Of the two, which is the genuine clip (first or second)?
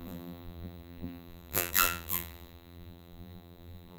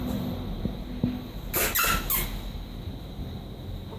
second